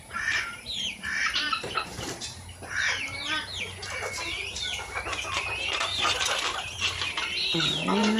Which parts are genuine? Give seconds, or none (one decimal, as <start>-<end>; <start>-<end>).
4.7-5.5